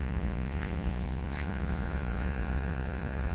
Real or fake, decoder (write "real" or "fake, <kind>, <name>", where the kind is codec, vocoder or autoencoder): fake, vocoder, Vocos